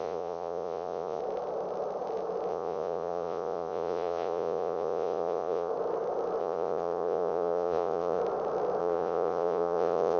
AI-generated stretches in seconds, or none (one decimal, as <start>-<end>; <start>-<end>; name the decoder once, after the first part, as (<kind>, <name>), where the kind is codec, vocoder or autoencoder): 0.0-1.2 (vocoder, Vocos); 2.5-5.7; 6.4-8.2; 8.8-10.2